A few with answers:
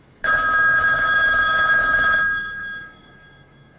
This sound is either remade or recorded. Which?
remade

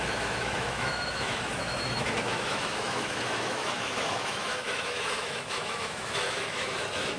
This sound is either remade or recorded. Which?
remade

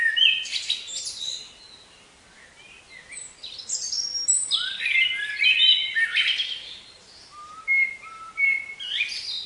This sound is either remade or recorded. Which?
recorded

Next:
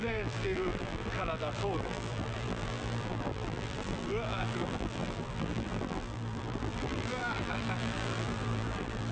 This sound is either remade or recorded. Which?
remade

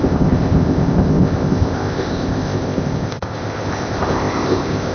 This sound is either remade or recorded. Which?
remade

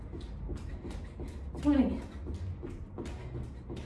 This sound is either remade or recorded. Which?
recorded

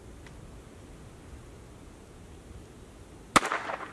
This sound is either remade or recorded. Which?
recorded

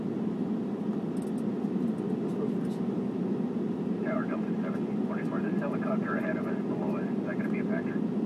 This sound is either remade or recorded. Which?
recorded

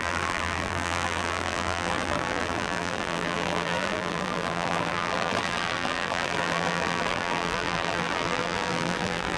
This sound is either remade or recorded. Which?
remade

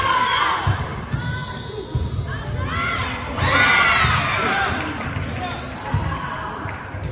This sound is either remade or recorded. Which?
recorded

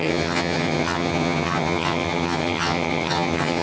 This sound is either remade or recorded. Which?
remade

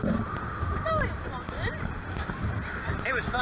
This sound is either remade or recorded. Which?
recorded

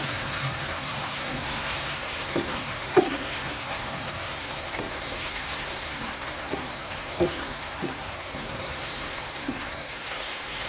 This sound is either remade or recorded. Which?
remade